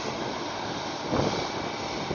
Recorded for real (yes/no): yes